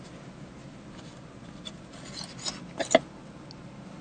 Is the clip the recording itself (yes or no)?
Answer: yes